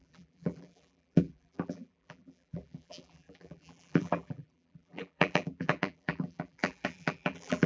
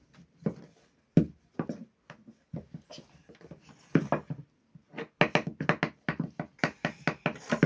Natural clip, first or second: second